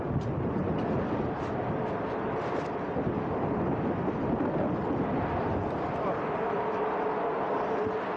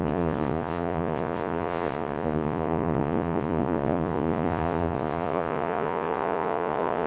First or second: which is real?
first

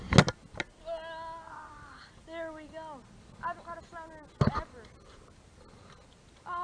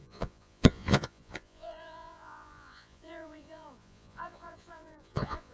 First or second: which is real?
first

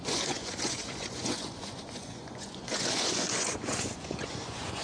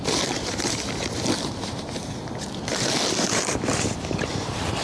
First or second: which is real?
second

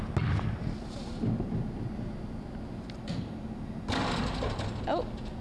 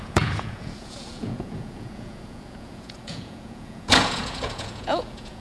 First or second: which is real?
first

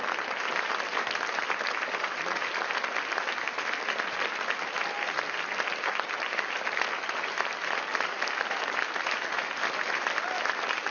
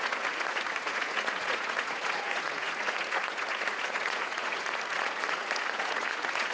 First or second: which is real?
first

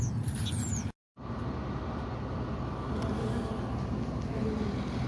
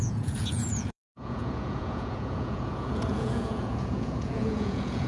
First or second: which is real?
first